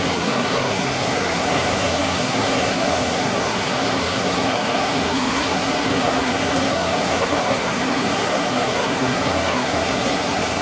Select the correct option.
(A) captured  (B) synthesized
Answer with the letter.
B